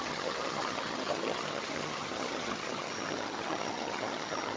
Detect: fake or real fake